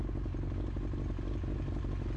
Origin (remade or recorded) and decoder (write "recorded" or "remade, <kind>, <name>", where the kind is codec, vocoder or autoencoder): recorded